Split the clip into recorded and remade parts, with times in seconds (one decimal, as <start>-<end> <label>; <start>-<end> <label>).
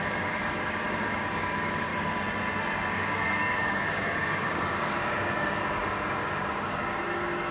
0.0-1.9 remade; 1.9-2.9 recorded; 2.9-7.5 remade